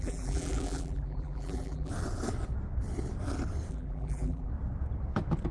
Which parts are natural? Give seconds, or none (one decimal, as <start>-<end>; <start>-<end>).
1.9-3.7; 4.5-5.5